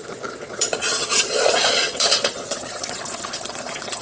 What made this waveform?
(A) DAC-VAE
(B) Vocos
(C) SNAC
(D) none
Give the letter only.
B